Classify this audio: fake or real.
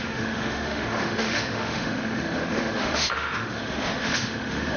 fake